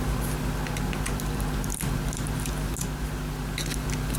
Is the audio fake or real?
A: real